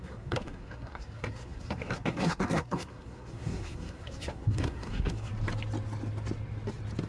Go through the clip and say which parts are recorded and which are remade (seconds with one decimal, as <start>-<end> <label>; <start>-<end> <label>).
0.0-5.3 remade; 5.3-7.1 recorded